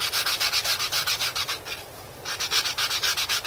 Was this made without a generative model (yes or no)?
yes